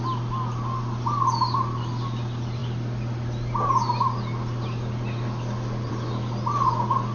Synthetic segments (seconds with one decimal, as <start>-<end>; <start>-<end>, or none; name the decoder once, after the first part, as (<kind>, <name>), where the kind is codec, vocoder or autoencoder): none

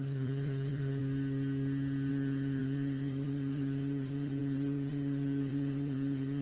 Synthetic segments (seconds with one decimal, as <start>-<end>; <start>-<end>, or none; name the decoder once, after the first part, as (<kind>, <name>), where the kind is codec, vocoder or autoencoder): 0.0-1.0 (vocoder, HiFi-GAN); 2.1-6.4

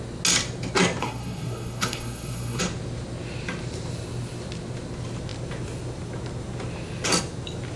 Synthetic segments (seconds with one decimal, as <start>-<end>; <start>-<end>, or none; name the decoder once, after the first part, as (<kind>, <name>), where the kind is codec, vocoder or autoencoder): 1.0-2.6 (codec, SNAC)